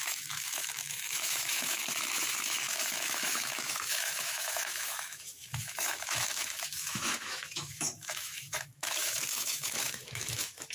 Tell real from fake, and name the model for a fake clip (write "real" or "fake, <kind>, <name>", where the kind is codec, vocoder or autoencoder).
fake, autoencoder, DAC-VAE